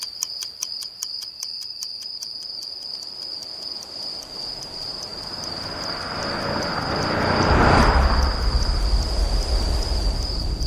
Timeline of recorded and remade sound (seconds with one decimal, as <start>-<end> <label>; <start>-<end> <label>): 0.0-10.7 remade